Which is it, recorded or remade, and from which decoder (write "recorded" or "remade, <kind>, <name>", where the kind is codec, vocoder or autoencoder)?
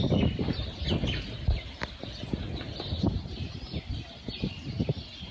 recorded